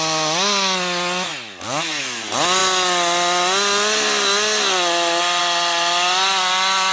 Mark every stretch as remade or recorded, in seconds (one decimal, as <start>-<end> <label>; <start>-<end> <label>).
0.0-6.9 recorded